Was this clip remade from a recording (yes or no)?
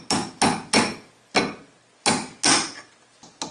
no